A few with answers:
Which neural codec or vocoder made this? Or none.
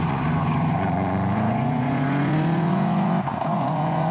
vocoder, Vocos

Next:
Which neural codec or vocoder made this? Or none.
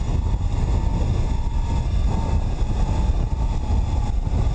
none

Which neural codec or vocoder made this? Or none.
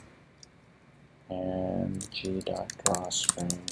none